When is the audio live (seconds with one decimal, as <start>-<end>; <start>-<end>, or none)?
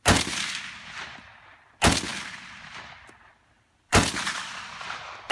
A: 0.0-5.3